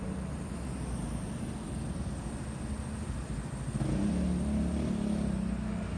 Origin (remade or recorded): recorded